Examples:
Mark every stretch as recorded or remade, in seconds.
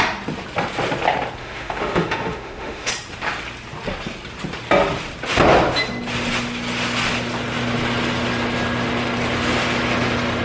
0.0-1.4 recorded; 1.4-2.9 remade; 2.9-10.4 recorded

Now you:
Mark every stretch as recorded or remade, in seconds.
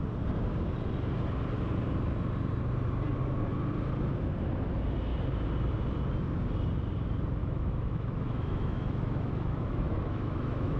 0.0-7.4 recorded; 7.4-10.8 remade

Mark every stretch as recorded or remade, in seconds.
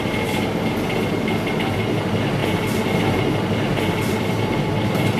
0.0-5.2 recorded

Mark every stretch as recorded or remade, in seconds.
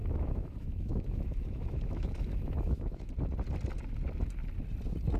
0.0-3.1 remade; 3.1-5.2 recorded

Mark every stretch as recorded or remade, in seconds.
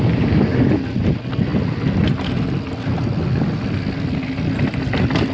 0.0-5.3 recorded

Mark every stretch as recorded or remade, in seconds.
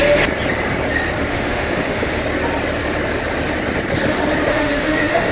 0.0-1.3 recorded; 1.3-2.2 remade; 2.2-4.5 recorded; 4.5-5.3 remade